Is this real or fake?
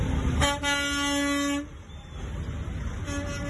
real